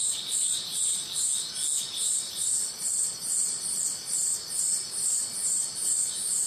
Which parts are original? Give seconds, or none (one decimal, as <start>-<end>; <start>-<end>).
1.3-1.8